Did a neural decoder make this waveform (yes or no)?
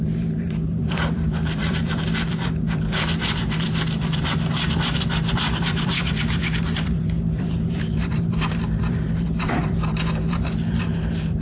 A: yes